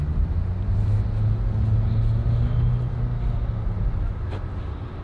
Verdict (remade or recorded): recorded